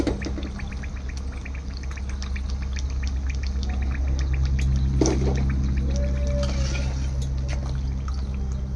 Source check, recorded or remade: recorded